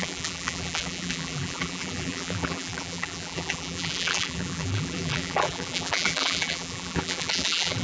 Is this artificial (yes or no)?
yes